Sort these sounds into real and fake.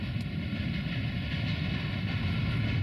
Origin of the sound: real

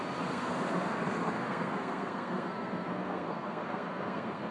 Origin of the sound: fake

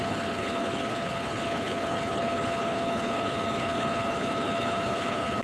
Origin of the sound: fake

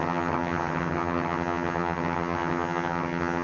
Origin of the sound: fake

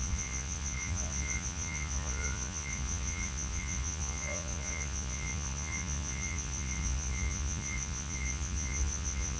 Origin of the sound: fake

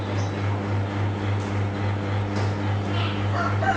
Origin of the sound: real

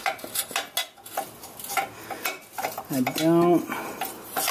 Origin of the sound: real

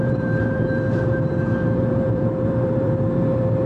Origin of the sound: fake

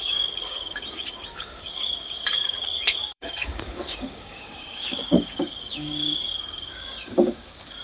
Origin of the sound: fake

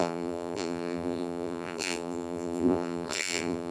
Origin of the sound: fake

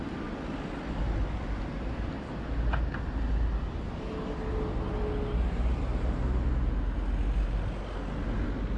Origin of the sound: real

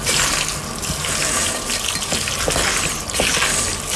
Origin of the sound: real